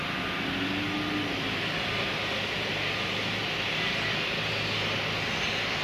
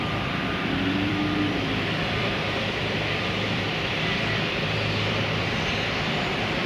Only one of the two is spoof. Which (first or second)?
second